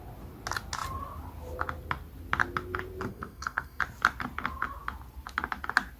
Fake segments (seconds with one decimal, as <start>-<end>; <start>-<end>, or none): 3.1-3.8